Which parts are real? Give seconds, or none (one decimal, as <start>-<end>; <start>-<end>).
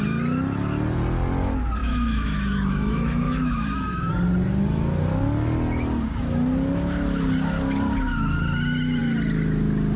0.0-1.8; 4.1-10.0